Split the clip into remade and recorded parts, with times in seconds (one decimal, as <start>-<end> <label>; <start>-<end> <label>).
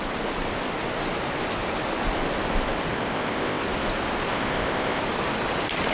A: 0.0-2.9 recorded; 2.9-3.6 remade; 3.6-4.3 recorded; 4.3-5.0 remade; 5.0-5.9 recorded